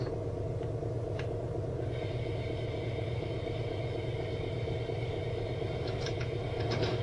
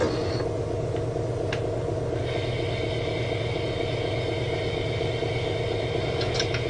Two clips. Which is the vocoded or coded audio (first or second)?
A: first